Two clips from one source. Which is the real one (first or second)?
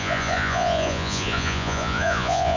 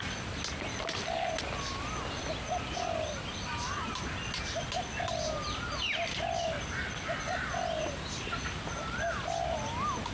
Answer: second